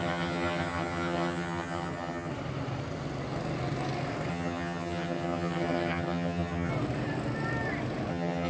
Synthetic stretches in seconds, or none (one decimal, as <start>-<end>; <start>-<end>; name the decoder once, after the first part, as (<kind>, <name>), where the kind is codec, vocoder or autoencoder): 0.0-2.3 (vocoder, HiFi-GAN); 4.3-6.7; 8.1-8.5